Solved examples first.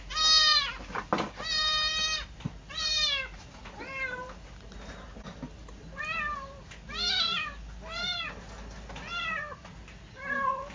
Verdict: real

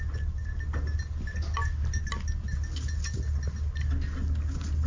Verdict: real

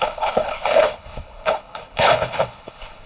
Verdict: fake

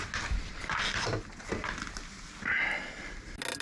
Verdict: real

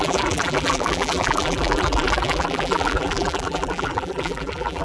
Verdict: fake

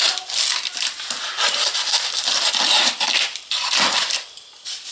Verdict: fake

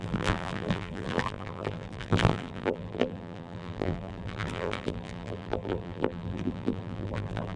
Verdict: fake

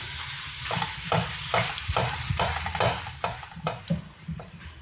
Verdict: fake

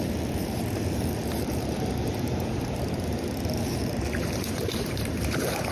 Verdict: fake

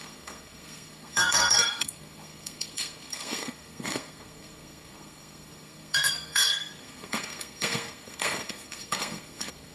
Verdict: fake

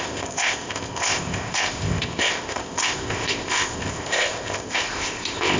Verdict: fake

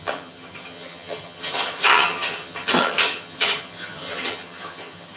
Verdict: fake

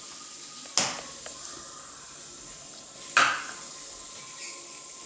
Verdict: real